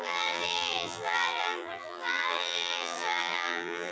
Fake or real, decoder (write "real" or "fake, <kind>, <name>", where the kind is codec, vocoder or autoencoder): fake, vocoder, BigVGAN v2